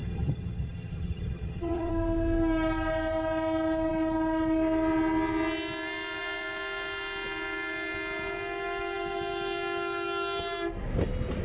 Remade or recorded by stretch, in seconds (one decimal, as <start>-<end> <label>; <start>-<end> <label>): 0.0-1.9 remade; 1.9-11.4 recorded